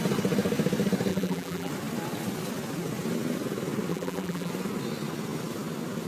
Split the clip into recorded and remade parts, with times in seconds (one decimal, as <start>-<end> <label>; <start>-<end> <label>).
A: 0.0-1.1 recorded; 1.1-1.7 remade; 1.7-3.9 recorded; 3.9-4.5 remade; 4.5-6.1 recorded